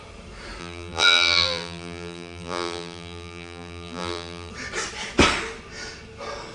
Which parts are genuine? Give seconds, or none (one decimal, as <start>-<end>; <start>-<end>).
0.0-0.6; 4.5-6.5

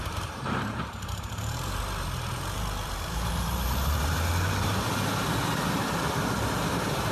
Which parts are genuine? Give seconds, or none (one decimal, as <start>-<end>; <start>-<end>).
4.3-7.1

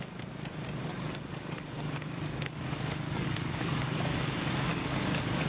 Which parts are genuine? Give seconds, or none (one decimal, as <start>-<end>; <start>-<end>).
0.0-0.9; 4.2-4.7

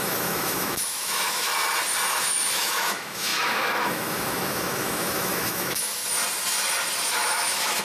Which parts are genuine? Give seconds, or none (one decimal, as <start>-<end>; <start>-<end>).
1.5-2.1; 6.0-7.1

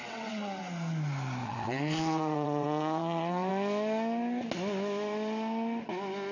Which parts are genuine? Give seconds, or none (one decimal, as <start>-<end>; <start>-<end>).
0.6-1.4; 3.5-6.3

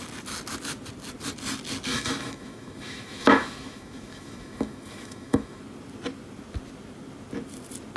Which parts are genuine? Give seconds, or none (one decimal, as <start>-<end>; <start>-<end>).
0.0-1.9; 5.6-8.0